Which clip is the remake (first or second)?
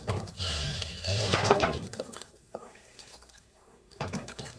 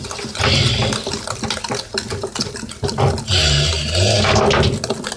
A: first